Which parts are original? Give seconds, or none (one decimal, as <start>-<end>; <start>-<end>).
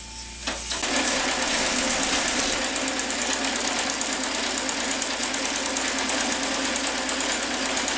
0.0-8.0